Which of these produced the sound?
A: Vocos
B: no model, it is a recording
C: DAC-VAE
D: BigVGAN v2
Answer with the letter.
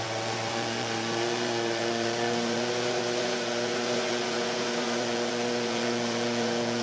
A